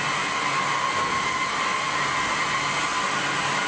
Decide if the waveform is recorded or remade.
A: recorded